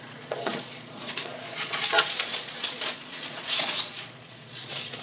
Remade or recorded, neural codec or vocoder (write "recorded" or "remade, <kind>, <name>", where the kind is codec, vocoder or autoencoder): remade, vocoder, Vocos